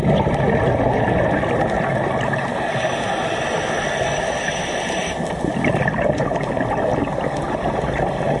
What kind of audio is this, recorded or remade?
recorded